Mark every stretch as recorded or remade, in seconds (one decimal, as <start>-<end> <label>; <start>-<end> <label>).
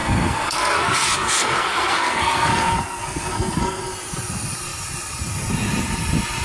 0.0-3.8 remade; 3.8-6.4 recorded